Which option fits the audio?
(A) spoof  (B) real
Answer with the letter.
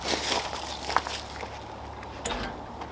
B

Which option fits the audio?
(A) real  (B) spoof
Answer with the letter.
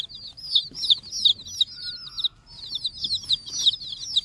A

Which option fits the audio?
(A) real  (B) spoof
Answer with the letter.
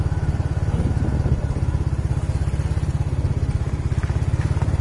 A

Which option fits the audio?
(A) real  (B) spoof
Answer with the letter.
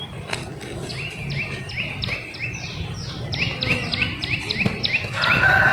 A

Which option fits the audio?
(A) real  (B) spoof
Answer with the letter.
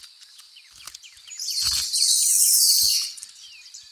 B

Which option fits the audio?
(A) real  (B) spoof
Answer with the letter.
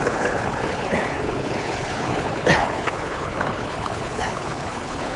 B